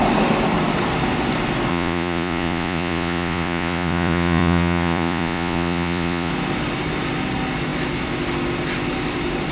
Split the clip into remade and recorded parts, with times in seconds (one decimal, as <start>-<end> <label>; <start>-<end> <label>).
0.0-1.7 recorded; 1.7-6.3 remade; 6.3-9.5 recorded